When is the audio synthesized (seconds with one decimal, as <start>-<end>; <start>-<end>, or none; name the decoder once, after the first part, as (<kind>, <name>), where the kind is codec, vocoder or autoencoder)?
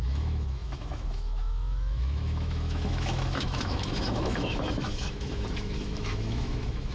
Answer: 0.0-6.9 (autoencoder, DAC-VAE)